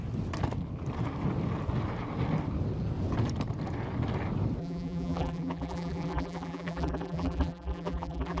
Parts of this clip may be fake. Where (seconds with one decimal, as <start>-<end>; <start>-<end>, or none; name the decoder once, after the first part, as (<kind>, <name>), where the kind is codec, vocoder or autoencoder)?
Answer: 4.6-8.4 (vocoder, BigVGAN v2)